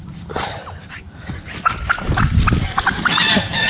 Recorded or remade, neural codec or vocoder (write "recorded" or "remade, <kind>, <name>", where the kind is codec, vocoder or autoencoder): remade, vocoder, BigVGAN v2